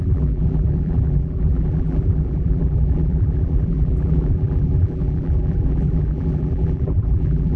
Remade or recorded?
remade